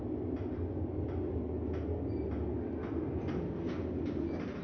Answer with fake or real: real